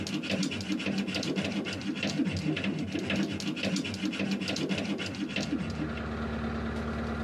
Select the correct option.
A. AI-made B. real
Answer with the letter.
B